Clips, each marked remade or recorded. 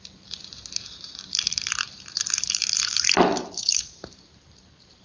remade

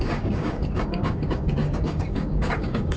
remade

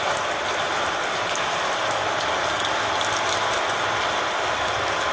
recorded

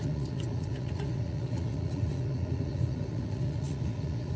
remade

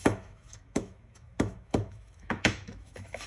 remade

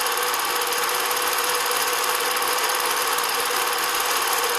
recorded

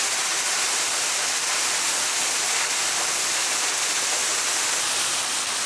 recorded